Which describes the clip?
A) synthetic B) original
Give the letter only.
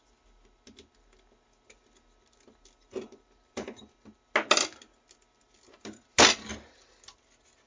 B